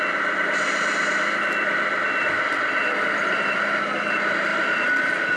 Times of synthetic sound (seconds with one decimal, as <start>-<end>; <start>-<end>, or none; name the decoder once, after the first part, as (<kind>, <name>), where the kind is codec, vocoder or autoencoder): none